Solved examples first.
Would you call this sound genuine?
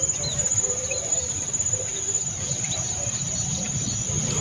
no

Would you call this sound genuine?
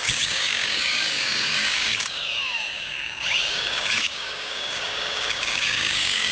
no